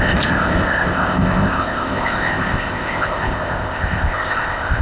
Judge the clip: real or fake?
fake